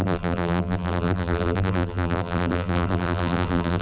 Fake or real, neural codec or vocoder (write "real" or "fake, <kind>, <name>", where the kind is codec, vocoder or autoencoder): fake, vocoder, BigVGAN v2